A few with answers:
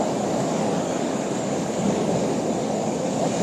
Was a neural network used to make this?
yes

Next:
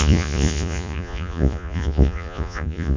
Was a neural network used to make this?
yes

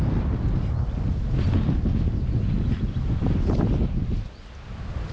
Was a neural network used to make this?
no